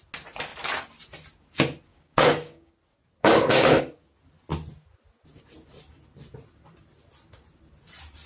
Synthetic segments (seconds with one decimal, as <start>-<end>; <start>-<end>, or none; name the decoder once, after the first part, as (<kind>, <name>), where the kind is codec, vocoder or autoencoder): 1.9-2.7 (codec, DAC); 3.2-3.8